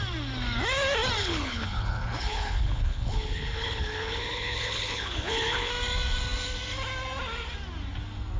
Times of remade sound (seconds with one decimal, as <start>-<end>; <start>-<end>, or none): 1.2-5.7